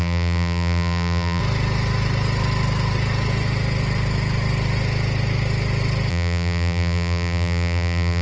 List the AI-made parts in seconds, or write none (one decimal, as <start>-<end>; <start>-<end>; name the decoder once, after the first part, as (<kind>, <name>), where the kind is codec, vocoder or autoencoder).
0.0-1.4 (vocoder, BigVGAN v2); 6.1-8.2

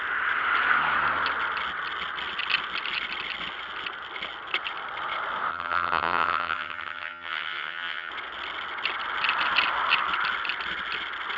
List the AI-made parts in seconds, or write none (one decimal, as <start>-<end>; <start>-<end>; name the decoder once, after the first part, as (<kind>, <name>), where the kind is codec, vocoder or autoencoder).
5.5-8.1 (vocoder, HiFi-GAN)

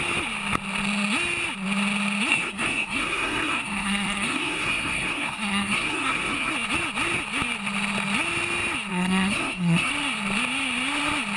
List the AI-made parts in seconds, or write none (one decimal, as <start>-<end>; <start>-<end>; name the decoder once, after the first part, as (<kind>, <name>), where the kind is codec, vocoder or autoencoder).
2.3-6.5 (codec, SNAC); 8.9-9.9